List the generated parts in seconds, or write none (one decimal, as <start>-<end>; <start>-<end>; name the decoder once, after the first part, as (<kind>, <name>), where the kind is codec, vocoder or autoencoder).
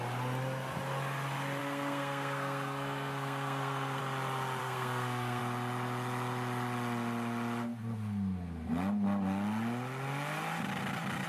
1.6-4.0 (codec, SNAC); 4.6-5.4